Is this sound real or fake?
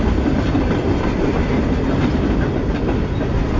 real